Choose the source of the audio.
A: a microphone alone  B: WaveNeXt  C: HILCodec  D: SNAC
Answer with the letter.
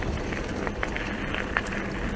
A